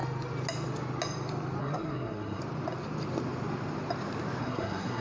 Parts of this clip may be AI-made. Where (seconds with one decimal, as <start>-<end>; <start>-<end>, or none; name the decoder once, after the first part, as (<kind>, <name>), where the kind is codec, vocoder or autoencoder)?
1.6-2.4 (codec, SNAC); 4.4-5.0